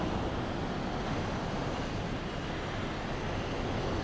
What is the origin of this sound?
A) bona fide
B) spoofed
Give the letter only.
A